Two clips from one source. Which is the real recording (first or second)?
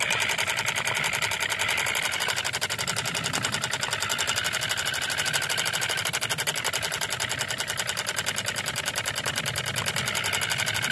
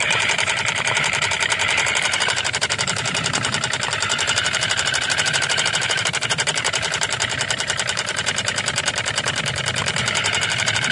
first